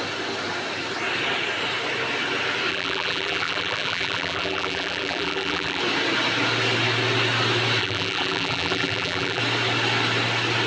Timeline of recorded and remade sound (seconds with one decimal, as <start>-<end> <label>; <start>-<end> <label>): 0.0-2.7 recorded; 2.7-5.8 remade; 5.8-7.8 recorded; 7.8-9.4 remade; 9.4-10.7 recorded